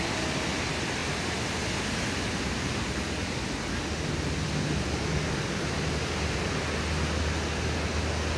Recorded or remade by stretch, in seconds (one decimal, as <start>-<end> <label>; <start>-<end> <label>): 0.0-8.4 recorded